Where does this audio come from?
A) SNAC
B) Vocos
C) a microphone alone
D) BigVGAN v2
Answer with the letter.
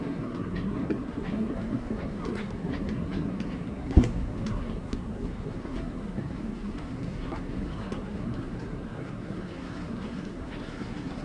A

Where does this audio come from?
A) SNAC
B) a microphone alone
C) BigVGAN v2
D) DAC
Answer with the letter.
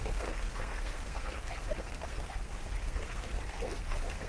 A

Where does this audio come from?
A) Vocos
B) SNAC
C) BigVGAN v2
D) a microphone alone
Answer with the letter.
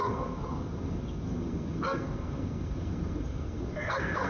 B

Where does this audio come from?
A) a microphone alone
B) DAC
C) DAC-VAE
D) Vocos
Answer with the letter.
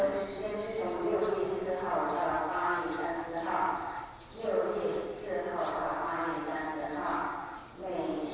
A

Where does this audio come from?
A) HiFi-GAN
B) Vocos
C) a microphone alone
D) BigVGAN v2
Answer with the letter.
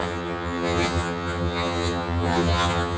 A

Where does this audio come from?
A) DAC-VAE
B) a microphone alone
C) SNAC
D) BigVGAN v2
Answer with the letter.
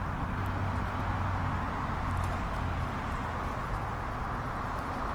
B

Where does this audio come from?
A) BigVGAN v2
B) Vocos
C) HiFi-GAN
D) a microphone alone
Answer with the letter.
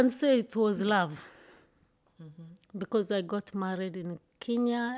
D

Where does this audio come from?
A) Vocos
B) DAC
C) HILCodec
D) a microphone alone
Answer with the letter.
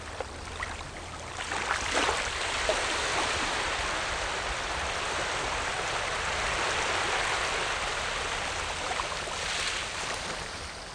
D